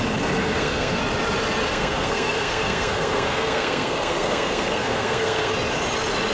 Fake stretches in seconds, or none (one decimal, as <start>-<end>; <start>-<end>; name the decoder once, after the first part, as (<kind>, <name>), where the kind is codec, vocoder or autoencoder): 0.4-1.0 (codec, SNAC); 1.7-5.5